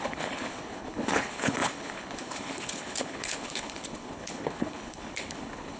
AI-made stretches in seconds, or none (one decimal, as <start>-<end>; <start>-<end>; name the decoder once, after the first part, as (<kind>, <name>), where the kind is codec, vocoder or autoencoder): 0.0-5.8 (codec, HILCodec)